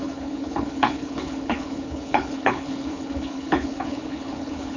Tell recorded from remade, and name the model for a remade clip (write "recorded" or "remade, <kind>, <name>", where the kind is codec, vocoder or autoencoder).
remade, codec, HILCodec